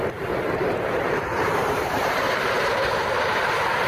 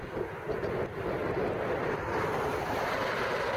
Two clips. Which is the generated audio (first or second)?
first